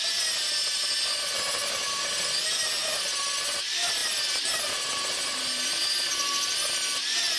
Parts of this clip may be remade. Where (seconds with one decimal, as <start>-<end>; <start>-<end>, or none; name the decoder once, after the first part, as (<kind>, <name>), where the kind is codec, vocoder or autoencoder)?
none